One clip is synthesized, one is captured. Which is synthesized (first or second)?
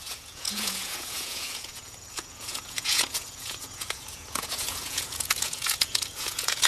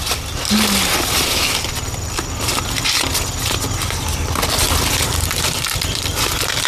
first